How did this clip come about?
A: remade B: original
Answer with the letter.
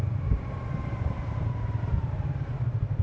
A